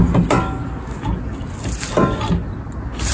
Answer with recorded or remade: recorded